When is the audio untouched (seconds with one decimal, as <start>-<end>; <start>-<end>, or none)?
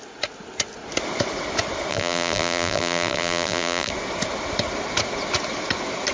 0.0-1.9; 3.9-6.1